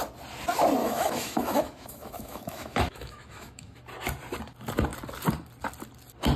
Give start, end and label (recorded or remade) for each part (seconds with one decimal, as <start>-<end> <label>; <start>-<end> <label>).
0.0-0.8 recorded; 0.8-3.8 remade; 3.8-6.4 recorded